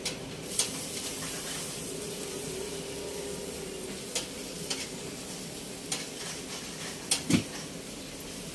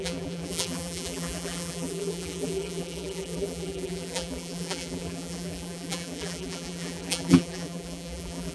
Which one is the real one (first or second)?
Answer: first